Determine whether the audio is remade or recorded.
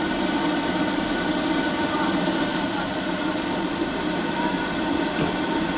recorded